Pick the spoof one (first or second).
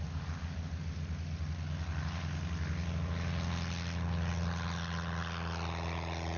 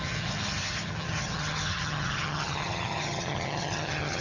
second